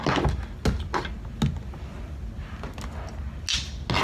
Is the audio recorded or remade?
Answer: recorded